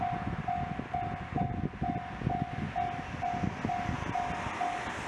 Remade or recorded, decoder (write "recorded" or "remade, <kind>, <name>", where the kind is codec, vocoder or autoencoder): recorded